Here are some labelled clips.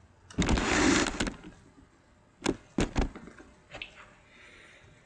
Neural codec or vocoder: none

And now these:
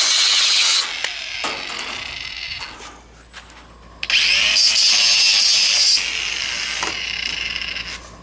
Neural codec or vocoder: none